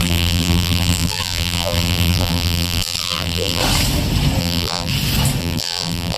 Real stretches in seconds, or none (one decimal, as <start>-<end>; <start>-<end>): 3.6-4.4; 4.9-5.4